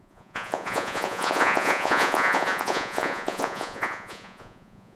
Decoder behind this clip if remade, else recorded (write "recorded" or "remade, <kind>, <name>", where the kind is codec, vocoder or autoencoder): remade, vocoder, Vocos